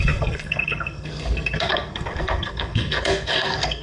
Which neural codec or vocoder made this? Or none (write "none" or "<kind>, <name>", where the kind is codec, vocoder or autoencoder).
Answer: codec, SNAC